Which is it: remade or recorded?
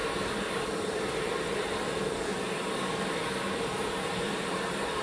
remade